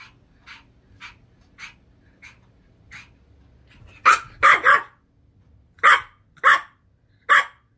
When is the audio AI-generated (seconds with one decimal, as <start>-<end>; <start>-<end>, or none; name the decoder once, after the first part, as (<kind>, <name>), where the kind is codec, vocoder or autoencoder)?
none